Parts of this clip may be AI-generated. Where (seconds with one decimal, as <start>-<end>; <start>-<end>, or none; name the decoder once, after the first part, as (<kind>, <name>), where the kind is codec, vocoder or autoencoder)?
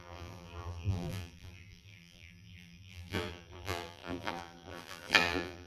0.0-5.7 (vocoder, BigVGAN v2)